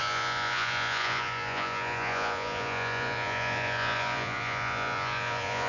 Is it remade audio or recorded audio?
remade